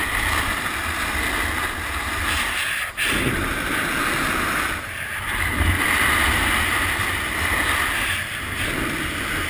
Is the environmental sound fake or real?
real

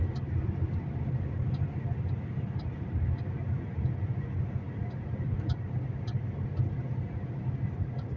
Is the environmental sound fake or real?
real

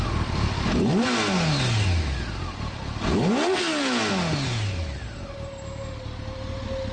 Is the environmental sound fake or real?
real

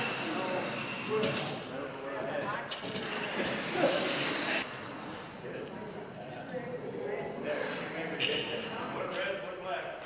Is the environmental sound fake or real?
real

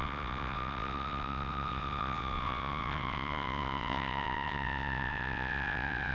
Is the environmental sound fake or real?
fake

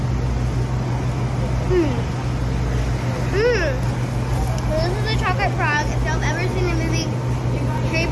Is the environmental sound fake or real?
real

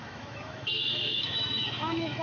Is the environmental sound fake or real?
fake